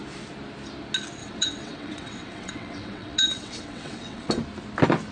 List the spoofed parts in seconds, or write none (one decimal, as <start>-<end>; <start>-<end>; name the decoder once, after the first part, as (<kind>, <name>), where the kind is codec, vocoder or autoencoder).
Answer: 1.2-4.3 (vocoder, WaveNeXt)